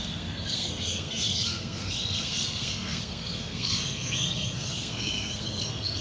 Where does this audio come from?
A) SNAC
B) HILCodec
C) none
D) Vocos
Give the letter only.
A